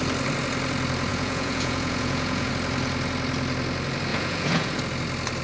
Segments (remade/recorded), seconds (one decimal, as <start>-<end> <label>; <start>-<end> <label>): 0.0-1.1 recorded; 1.1-2.5 remade; 2.5-4.1 recorded; 4.1-4.8 remade; 4.8-5.4 recorded